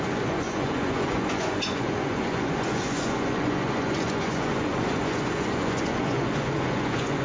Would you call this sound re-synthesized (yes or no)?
yes